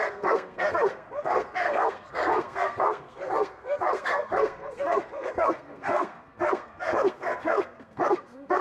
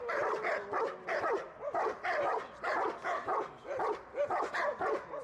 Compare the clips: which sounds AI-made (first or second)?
first